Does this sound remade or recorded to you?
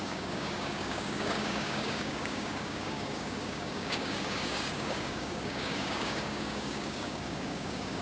remade